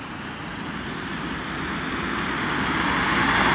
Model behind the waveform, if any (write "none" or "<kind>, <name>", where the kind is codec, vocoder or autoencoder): none